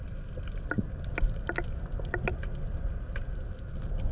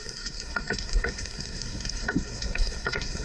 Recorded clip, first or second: first